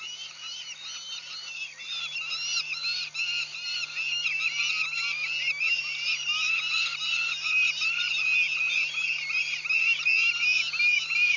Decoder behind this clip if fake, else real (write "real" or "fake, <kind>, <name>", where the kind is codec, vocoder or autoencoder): real